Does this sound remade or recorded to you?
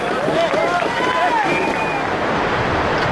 recorded